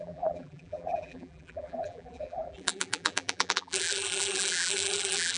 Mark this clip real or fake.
fake